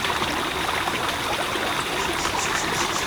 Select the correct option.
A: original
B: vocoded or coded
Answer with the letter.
A